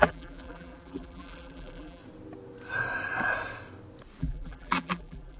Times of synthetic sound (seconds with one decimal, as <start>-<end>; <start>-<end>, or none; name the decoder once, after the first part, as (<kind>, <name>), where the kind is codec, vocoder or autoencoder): 0.0-2.0 (vocoder, BigVGAN v2); 4.2-5.4